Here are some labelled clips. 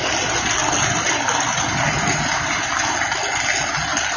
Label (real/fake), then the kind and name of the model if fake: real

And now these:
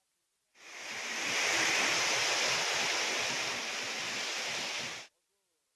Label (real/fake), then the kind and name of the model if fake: real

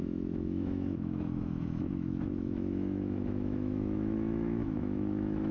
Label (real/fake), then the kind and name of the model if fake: fake, autoencoder, DAC-VAE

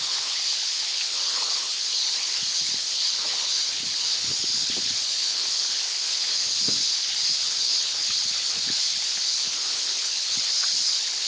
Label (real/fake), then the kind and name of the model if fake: fake, codec, HILCodec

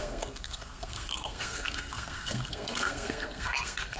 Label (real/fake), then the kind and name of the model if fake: fake, codec, SNAC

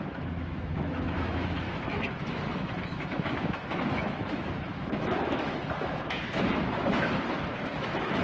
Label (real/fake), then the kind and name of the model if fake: fake, autoencoder, DAC-VAE